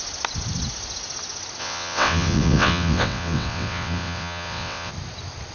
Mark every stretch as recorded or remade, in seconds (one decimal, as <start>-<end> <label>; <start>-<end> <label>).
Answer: 0.0-1.6 recorded; 1.6-4.9 remade; 4.9-5.5 recorded